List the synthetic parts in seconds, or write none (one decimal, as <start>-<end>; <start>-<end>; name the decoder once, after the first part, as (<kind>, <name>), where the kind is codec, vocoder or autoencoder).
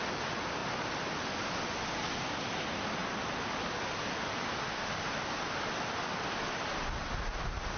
none